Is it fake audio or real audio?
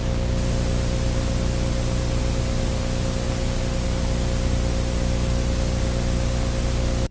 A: real